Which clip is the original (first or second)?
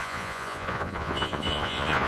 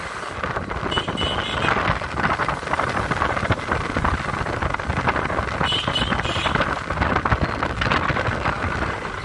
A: second